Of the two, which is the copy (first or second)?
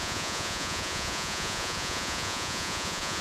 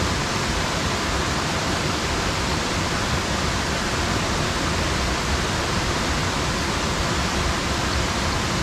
first